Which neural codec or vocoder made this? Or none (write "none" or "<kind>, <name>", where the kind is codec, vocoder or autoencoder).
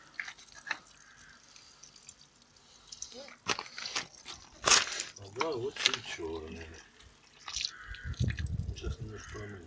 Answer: none